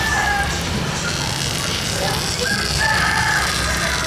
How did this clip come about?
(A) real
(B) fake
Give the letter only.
A